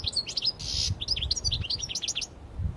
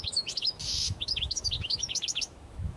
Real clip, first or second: first